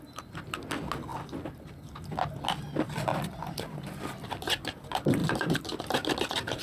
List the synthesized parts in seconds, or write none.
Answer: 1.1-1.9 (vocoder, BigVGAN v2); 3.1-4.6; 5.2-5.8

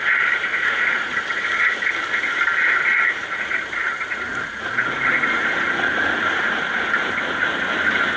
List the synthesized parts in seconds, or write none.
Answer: 0.5-1.9 (vocoder, Vocos); 2.9-6.8

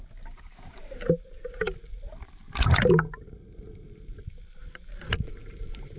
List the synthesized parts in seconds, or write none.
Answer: 4.6-6.0 (vocoder, BigVGAN v2)

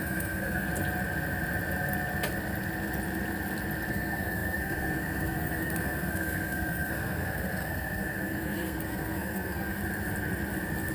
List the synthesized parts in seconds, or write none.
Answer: 0.0-0.7 (codec, SNAC); 3.9-9.8

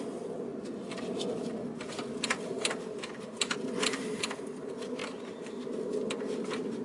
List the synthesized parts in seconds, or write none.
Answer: 0.5-4.3 (vocoder, BigVGAN v2); 5.0-5.5